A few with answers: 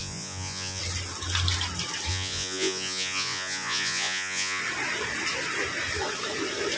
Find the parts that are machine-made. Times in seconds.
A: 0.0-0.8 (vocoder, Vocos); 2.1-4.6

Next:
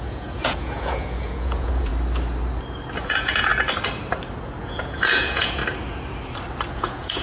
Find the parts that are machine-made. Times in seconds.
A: 0.0-1.9 (vocoder, Vocos); 3.0-3.5; 4.6-5.6; 6.7-7.2

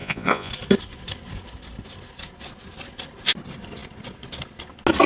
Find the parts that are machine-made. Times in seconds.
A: 0.0-0.5 (vocoder, Vocos)

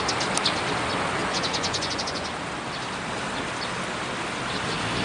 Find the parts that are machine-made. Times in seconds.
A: 1.2-2.3 (vocoder, Vocos)

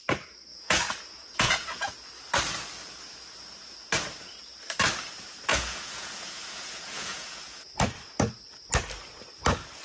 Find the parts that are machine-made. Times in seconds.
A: 0.5-1.9 (vocoder, Vocos); 5.5-7.7

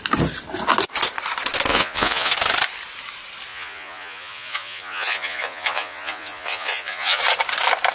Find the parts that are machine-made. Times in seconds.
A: 1.7-2.3 (vocoder, Vocos); 3.5-7.2

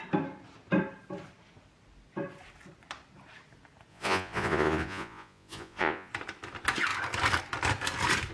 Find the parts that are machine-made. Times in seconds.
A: 3.9-6.1 (vocoder, Vocos)